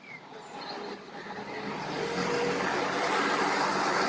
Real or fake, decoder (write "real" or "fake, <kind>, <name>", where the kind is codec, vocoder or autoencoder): real